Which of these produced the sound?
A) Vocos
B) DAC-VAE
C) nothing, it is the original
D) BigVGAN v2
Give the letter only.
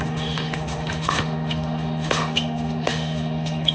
B